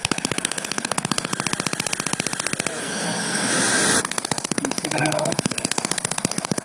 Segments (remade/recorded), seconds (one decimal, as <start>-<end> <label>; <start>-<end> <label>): 0.0-1.3 remade; 1.3-2.8 recorded; 2.8-3.5 remade; 3.5-4.0 recorded; 4.0-6.6 remade